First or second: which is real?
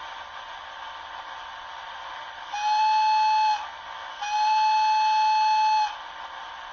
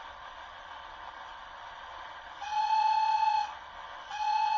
first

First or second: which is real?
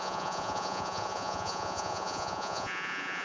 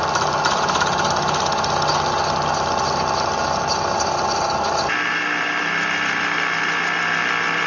second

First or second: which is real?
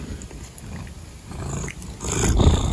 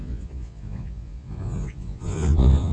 first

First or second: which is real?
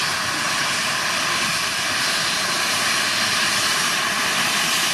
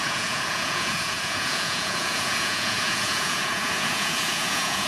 first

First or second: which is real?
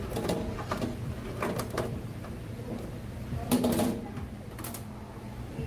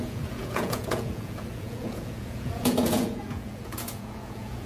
first